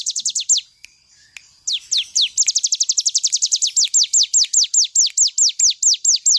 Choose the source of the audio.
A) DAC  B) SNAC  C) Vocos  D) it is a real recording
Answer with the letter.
D